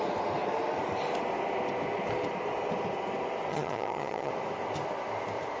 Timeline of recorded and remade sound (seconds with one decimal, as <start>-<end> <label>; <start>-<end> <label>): 0.0-3.5 recorded; 3.5-4.3 remade; 4.3-5.6 recorded